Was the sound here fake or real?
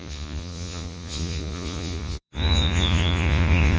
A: fake